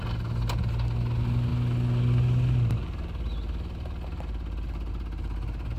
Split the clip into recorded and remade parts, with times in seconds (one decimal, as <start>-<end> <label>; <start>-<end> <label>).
0.0-5.8 recorded